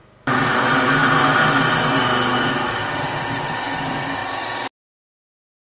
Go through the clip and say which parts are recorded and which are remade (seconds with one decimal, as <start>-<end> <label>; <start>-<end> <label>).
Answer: 0.0-5.8 recorded